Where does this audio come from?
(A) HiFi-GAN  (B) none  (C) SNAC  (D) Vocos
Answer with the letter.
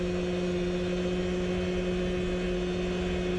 B